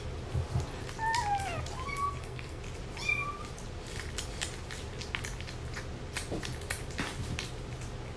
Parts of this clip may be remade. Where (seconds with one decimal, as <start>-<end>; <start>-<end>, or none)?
2.0-2.6